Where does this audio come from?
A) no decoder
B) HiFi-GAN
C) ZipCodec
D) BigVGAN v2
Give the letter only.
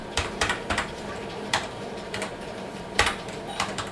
D